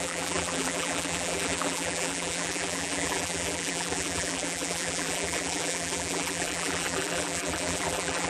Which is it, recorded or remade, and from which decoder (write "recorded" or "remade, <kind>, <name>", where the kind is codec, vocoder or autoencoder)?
remade, vocoder, BigVGAN v2